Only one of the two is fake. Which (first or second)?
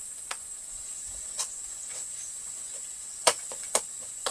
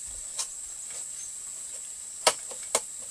first